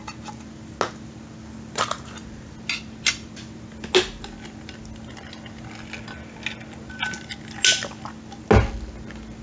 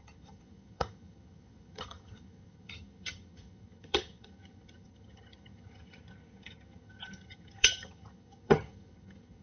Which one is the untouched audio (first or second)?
first